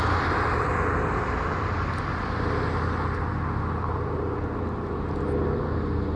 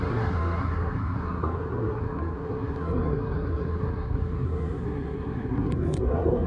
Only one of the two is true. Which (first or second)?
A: first